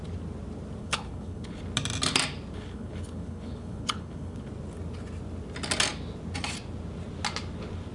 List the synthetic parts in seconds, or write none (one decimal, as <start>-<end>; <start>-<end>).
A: 0.8-1.6; 2.5-4.5